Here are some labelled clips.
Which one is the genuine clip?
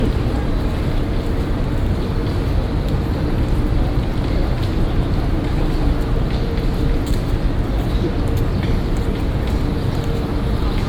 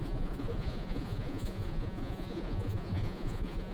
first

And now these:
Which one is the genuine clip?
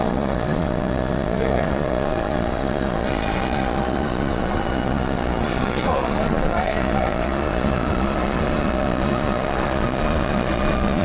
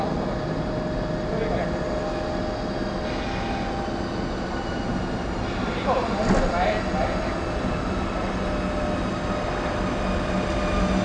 second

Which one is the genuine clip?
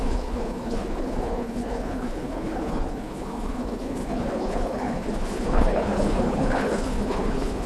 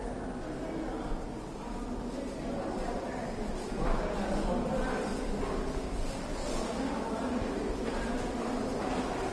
second